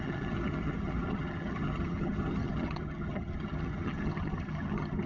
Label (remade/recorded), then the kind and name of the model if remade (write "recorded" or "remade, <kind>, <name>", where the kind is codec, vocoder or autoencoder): remade, vocoder, HiFi-GAN